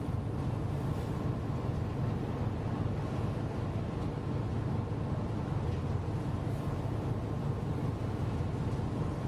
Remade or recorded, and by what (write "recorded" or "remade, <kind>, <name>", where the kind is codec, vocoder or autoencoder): recorded